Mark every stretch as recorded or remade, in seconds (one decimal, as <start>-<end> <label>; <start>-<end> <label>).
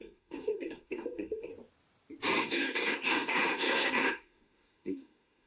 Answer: 0.0-1.5 remade; 1.5-2.4 recorded; 2.4-5.5 remade